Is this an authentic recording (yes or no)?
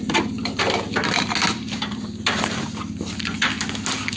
yes